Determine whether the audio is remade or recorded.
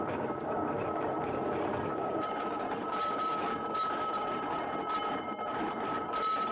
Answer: remade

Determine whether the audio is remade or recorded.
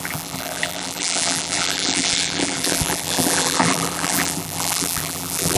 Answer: remade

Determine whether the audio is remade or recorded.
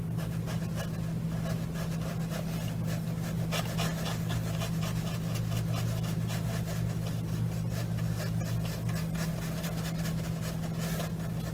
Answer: recorded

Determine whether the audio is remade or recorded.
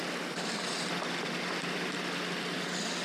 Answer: recorded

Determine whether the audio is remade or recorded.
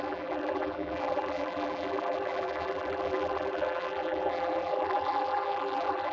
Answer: remade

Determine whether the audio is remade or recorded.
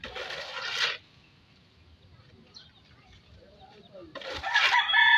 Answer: recorded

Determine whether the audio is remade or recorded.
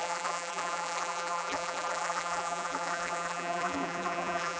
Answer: remade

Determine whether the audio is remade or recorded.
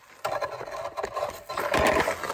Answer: recorded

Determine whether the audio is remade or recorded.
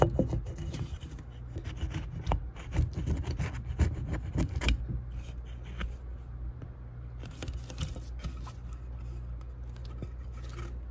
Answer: recorded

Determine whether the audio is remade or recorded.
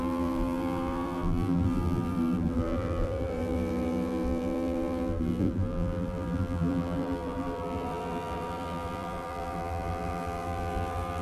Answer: remade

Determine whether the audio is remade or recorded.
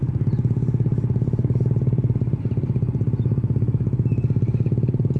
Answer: recorded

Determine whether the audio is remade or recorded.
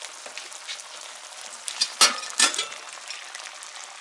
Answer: recorded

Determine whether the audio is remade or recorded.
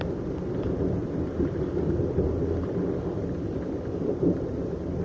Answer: remade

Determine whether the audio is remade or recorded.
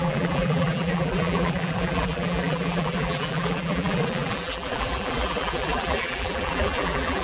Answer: remade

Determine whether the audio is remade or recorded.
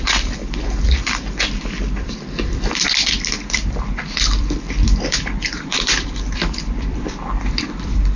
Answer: remade